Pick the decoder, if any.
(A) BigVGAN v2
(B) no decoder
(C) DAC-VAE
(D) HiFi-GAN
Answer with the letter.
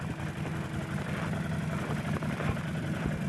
B